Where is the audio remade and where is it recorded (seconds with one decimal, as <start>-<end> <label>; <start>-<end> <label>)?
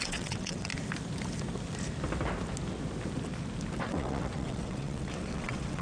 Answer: 0.0-0.7 remade; 0.7-3.8 recorded; 3.8-5.8 remade